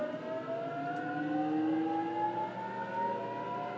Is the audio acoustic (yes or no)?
yes